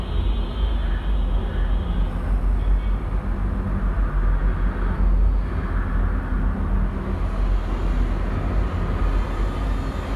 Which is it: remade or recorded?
recorded